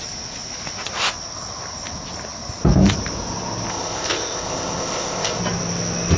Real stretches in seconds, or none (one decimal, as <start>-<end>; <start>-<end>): 0.0-3.7; 5.4-6.2